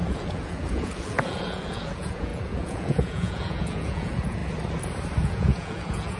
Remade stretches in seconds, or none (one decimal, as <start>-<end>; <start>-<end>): 0.0-4.4; 5.2-6.2